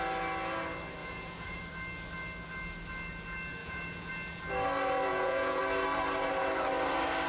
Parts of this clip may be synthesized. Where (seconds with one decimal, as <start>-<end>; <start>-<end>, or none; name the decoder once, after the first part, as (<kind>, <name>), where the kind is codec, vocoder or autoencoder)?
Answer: 1.0-1.6 (vocoder, Vocos); 3.6-4.1; 5.1-5.6